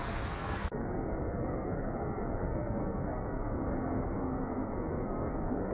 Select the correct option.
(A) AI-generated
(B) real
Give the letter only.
A